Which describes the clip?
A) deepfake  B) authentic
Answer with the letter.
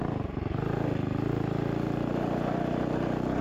B